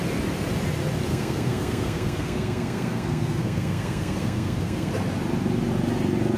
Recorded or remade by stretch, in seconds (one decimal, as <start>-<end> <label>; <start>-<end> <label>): 0.0-1.1 recorded; 1.1-4.9 remade; 4.9-6.4 recorded